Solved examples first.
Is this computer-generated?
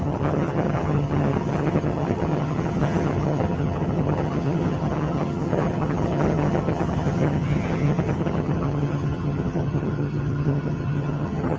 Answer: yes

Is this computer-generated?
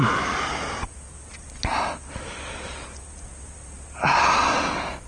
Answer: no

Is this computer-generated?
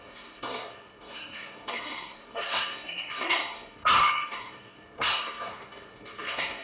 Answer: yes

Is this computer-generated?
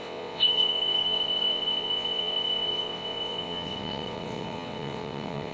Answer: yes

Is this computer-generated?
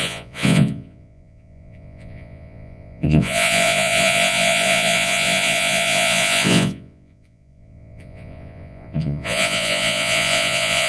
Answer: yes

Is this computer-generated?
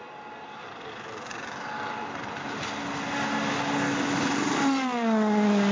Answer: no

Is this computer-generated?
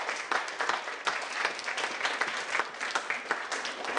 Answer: no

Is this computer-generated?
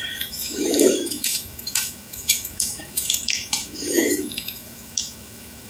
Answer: yes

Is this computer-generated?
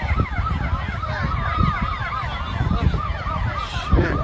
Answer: no